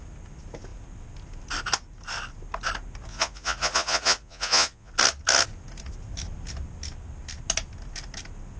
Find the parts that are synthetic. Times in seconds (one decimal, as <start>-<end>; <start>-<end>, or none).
3.1-4.9

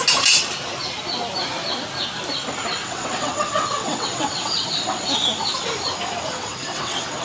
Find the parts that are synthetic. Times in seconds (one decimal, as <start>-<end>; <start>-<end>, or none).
2.8-5.0; 6.4-7.2

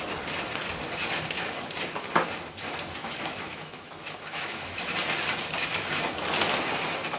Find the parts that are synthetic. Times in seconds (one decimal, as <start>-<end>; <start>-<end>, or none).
3.0-4.8

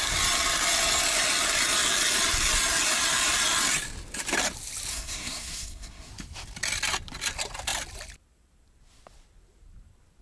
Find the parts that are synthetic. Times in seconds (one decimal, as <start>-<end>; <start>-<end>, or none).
4.9-6.1

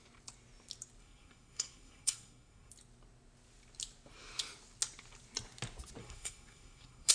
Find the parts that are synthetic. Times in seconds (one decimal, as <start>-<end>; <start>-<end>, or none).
1.0-2.7; 6.0-7.1

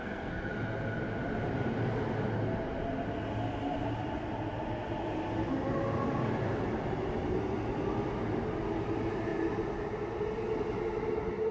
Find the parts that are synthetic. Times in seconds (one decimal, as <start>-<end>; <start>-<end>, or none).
0.0-0.5